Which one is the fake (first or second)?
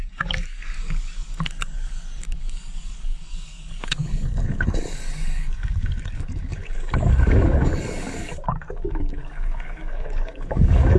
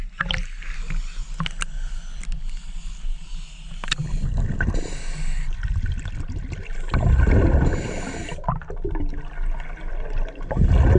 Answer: first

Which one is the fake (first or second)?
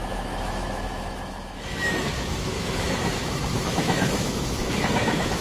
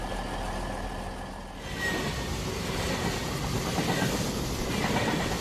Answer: first